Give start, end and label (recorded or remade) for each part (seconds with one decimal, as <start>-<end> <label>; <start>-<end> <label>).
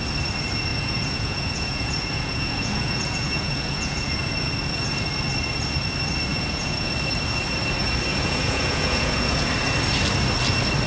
0.0-0.7 recorded; 0.7-4.5 remade; 4.5-6.3 recorded; 6.3-6.9 remade; 6.9-8.1 recorded; 8.1-9.5 remade; 9.5-10.9 recorded